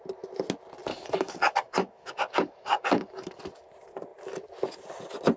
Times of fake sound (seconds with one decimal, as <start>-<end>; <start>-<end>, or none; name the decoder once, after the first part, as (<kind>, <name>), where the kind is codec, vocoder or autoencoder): 0.9-3.4 (codec, DAC)

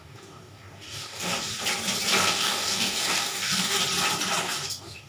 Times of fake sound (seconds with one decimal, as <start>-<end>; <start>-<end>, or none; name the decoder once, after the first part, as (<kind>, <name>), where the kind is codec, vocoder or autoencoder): 0.0-1.5 (codec, DAC); 2.2-3.8; 4.4-5.1

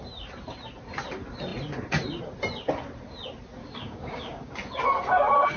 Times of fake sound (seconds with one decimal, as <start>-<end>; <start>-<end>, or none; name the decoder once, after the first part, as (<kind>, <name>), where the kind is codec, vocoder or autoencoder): 3.6-4.5 (codec, DAC)

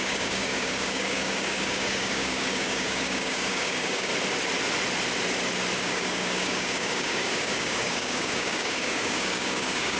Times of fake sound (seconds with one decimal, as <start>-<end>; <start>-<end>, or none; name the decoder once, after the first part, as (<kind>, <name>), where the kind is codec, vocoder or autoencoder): 0.0-4.1 (codec, DAC); 5.8-10.0